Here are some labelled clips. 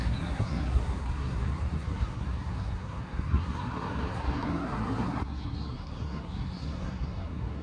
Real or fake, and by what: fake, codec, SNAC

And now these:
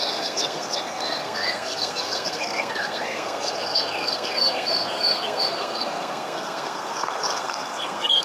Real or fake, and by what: fake, codec, SNAC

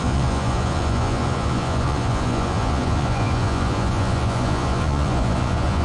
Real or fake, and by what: fake, vocoder, Vocos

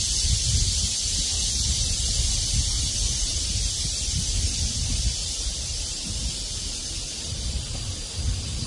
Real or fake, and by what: real